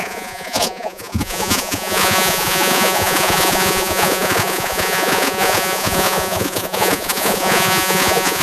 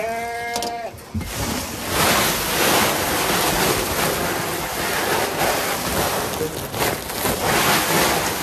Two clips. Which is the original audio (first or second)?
second